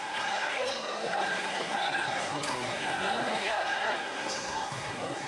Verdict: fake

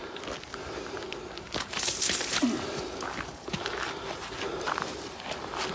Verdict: real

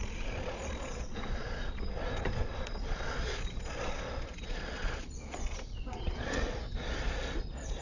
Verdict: fake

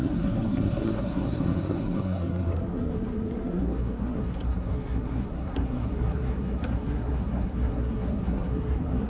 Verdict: fake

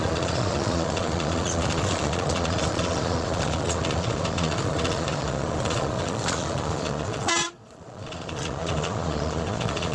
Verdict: fake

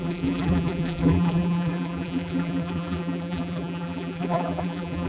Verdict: fake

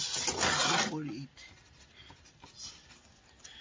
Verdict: real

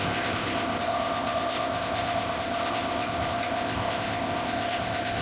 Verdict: fake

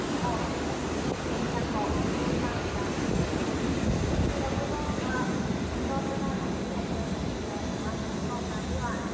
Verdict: real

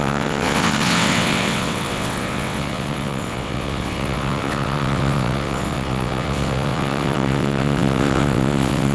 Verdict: fake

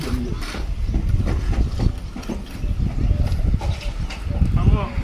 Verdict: real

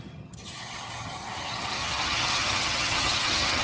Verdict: fake